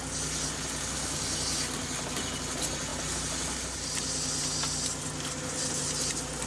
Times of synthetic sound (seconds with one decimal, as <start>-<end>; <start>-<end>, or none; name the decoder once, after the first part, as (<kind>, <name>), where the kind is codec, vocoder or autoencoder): none

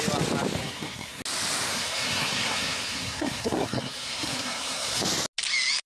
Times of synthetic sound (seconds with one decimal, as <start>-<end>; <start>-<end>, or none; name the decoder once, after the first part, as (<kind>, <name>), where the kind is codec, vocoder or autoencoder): 0.6-1.2 (codec, SNAC); 1.7-5.0

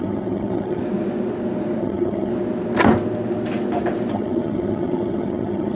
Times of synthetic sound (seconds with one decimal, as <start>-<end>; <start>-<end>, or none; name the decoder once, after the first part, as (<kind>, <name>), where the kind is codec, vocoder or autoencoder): 0.0-0.8 (vocoder, HiFi-GAN); 1.8-2.3; 4.1-5.7

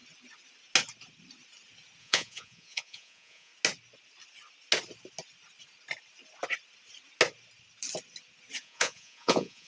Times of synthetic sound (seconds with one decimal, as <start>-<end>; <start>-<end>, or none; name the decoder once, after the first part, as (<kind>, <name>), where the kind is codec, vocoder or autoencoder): 2.0-3.5 (vocoder, Vocos); 8.6-9.7

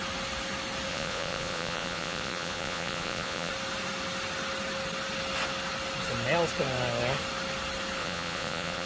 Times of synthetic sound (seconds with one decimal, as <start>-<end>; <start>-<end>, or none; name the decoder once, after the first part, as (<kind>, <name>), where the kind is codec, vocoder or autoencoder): 0.9-3.5 (vocoder, Vocos); 8.0-8.9